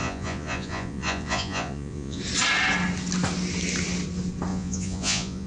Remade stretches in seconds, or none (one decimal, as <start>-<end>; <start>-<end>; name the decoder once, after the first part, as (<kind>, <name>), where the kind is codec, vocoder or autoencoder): 0.0-2.2 (vocoder, Vocos); 4.5-5.5